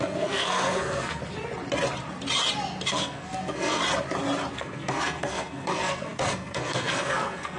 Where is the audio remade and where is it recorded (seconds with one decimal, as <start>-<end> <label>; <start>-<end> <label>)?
0.0-1.2 remade; 1.2-2.9 recorded; 2.9-3.8 remade; 3.8-4.5 recorded; 4.5-7.6 remade